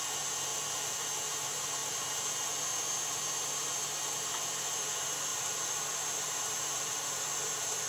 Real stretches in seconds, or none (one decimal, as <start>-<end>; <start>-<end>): 0.0-5.3; 7.3-7.9